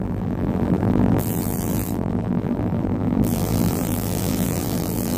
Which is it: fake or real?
fake